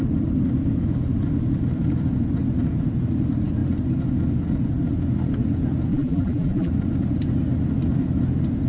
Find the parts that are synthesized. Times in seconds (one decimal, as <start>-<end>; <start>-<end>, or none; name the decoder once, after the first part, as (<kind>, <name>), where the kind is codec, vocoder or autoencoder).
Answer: 5.9-6.7 (vocoder, BigVGAN v2)